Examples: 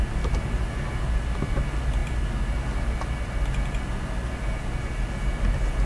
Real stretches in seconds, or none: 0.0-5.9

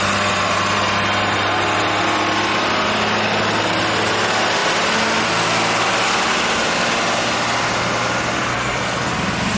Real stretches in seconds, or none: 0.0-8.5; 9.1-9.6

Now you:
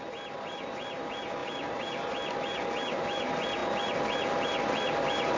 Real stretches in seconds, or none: 0.0-5.4